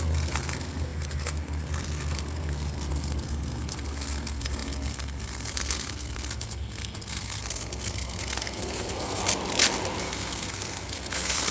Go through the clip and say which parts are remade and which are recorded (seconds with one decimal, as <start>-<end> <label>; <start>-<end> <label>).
0.0-9.2 remade; 9.2-10.0 recorded; 10.0-11.5 remade